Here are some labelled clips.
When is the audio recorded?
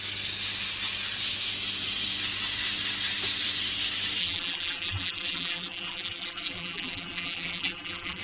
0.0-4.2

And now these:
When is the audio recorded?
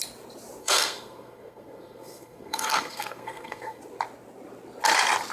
0.0-0.6; 3.8-5.3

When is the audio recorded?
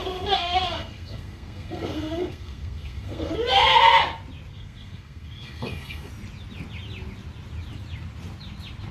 3.3-4.5; 6.1-8.9